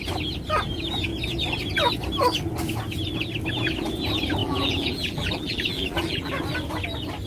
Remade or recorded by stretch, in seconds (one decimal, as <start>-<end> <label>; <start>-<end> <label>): 0.0-4.4 recorded; 4.4-6.3 remade; 6.3-7.3 recorded